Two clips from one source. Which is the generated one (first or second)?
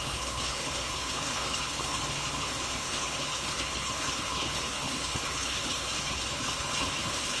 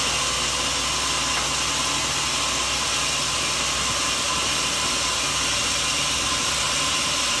first